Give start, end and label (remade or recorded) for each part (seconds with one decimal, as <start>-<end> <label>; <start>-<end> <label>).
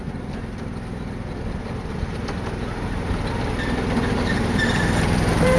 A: 0.0-0.7 remade; 0.7-4.1 recorded; 4.1-5.6 remade